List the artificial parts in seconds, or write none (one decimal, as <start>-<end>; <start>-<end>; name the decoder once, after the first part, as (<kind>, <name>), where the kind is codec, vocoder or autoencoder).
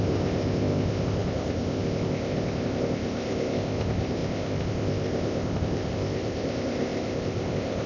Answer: 0.0-7.9 (codec, ZipCodec)